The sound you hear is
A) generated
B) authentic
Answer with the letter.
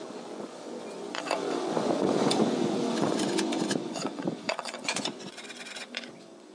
A